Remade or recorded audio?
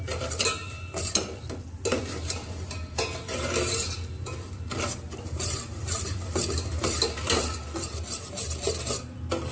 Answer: recorded